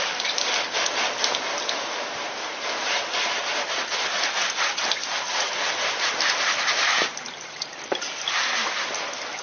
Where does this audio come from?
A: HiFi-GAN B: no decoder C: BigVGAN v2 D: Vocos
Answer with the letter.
B